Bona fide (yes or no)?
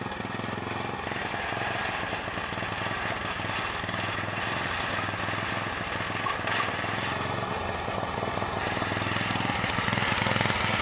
yes